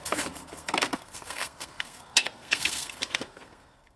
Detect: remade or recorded remade